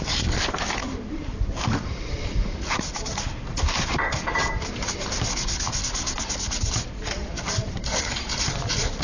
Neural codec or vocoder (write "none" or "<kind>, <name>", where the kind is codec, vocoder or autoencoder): vocoder, BigVGAN v2